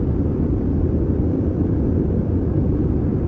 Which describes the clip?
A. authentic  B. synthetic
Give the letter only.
A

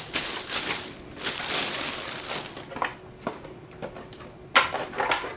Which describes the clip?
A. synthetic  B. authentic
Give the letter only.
B